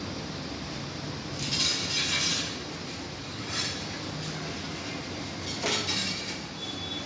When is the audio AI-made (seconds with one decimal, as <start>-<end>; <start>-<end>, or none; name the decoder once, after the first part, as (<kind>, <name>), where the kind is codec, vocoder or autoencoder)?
2.3-3.8 (vocoder, BigVGAN v2); 6.0-6.6